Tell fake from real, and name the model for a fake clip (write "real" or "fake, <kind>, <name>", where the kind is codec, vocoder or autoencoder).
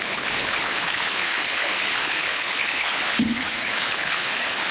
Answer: fake, codec, HILCodec